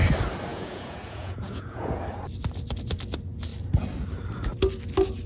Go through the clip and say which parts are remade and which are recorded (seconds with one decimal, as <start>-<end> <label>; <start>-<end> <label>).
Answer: 0.0-0.5 recorded; 0.5-2.0 remade; 2.0-5.3 recorded